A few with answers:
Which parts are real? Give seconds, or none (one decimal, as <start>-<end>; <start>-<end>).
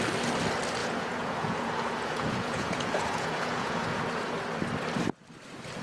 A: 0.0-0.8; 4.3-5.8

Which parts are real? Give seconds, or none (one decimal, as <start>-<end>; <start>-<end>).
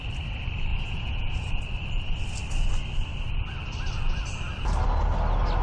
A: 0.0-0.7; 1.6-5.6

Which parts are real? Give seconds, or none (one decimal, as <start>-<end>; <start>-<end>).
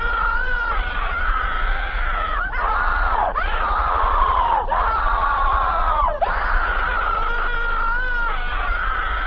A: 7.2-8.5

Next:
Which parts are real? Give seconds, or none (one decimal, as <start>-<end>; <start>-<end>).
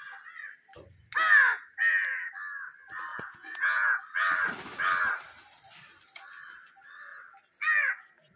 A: 0.0-3.1; 4.0-8.4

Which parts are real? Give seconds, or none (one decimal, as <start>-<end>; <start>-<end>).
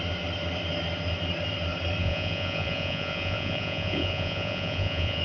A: 0.0-2.0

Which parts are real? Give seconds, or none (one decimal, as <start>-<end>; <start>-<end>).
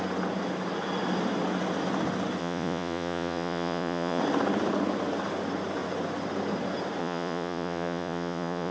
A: 0.0-2.4; 4.2-7.0